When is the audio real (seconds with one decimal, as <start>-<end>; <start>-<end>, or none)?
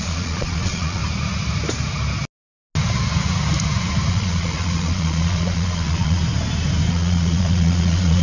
1.0-4.1; 6.2-6.9